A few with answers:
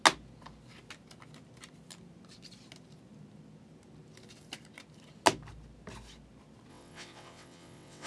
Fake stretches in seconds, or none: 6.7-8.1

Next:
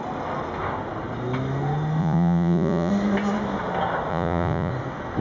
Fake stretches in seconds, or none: 2.0-2.9; 4.1-4.7

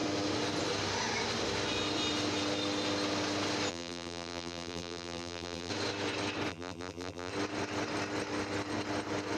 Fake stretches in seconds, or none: 3.7-5.7; 6.5-7.3

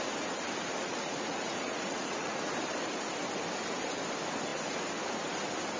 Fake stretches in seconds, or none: 0.8-2.5

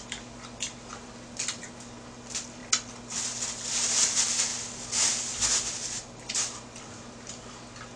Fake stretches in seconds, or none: none